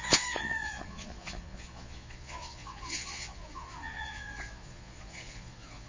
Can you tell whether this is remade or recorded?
remade